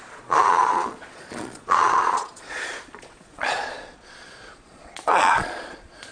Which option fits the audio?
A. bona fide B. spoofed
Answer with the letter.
B